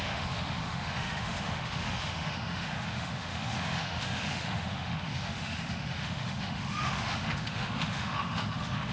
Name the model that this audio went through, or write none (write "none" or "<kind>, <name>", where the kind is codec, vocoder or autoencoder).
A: autoencoder, DAC-VAE